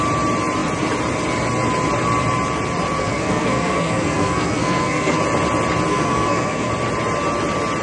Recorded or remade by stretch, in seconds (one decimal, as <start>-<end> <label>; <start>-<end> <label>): 0.0-3.0 recorded; 3.0-5.2 remade; 5.2-5.9 recorded; 5.9-6.7 remade; 6.7-7.8 recorded